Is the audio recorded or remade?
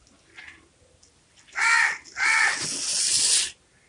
recorded